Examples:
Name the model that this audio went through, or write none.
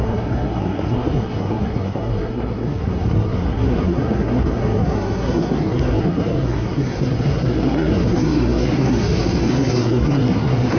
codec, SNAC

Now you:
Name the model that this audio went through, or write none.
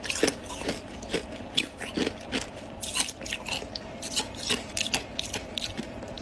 none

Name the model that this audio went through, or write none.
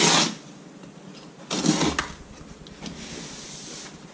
none